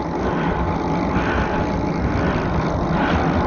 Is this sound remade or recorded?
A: recorded